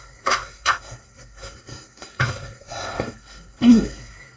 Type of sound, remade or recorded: remade